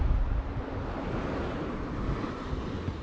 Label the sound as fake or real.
real